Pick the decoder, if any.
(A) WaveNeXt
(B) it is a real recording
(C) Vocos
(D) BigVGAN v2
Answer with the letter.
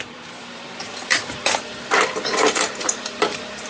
D